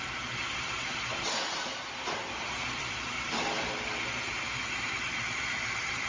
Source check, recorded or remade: remade